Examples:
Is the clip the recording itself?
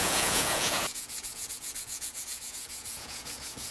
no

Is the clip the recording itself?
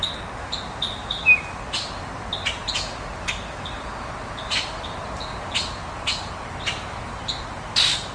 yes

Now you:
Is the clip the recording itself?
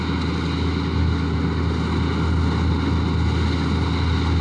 yes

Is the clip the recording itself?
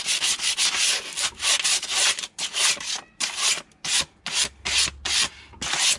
yes